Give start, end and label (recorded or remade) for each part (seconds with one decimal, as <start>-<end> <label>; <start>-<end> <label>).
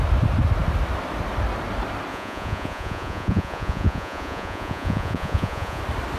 0.0-2.1 recorded; 2.1-5.8 remade; 5.8-6.2 recorded